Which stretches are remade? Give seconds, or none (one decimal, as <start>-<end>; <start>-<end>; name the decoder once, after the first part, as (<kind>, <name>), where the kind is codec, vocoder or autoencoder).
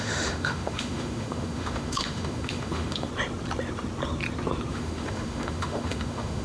0.0-3.1 (autoencoder, DAC-VAE); 4.7-6.4